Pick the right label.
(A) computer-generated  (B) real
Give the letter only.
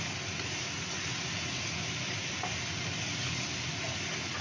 B